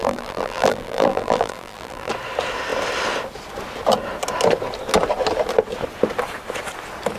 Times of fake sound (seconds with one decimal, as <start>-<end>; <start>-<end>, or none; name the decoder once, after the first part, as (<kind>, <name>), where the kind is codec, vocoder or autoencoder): 0.0-2.1 (vocoder, BigVGAN v2)